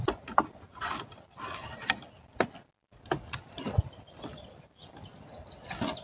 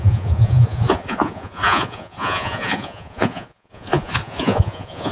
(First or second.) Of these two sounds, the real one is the first